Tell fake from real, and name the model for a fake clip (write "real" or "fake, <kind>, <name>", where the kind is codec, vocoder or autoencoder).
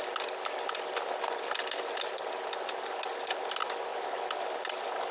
real